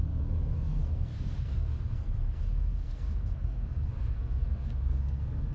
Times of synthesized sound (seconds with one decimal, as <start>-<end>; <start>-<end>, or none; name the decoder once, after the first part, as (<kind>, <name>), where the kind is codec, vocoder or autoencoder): 0.0-5.5 (codec, SNAC)